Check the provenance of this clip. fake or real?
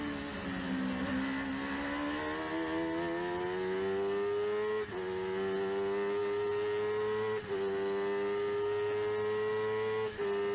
real